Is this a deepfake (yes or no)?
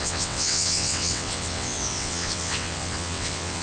yes